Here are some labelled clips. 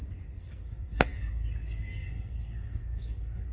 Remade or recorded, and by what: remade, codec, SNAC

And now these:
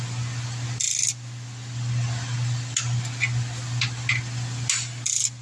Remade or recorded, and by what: recorded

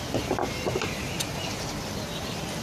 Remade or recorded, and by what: recorded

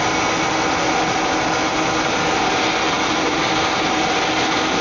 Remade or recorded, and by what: recorded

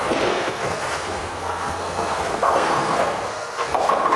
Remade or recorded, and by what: remade, codec, SNAC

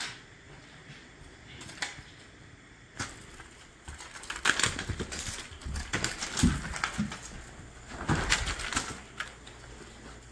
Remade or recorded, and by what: recorded